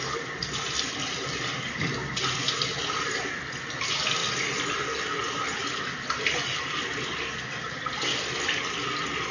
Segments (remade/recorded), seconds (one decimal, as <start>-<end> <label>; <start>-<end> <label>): 0.0-9.3 recorded